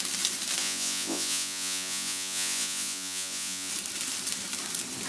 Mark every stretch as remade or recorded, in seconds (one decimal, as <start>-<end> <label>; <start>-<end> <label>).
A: 0.0-0.6 recorded; 0.6-3.7 remade; 3.7-5.1 recorded